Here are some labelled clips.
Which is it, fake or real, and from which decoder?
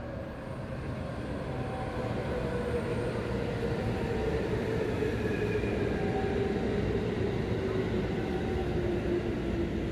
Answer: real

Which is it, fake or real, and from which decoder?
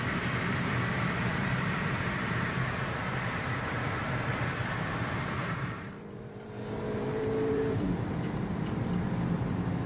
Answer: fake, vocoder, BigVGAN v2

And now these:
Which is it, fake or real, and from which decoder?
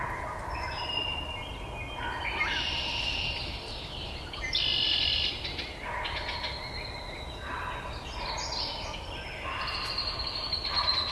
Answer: real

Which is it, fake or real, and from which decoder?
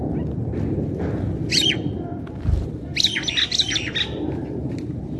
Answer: fake, vocoder, BigVGAN v2